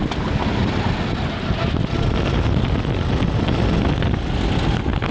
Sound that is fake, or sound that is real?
real